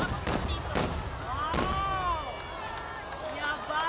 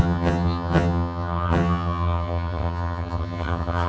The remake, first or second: second